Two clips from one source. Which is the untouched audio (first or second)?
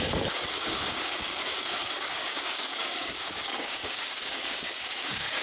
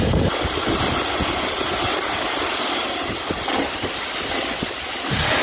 second